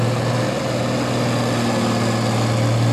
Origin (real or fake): real